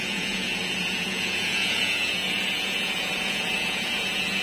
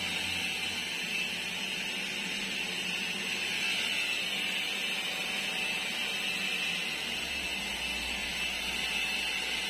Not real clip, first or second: first